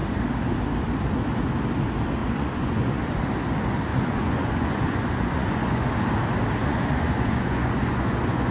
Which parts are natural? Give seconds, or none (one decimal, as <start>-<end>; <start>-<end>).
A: 0.0-2.2; 3.2-3.9; 5.9-6.6